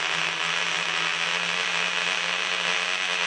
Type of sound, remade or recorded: recorded